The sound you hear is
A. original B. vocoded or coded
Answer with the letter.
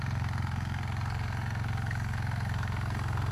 B